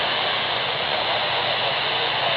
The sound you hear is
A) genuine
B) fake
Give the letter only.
B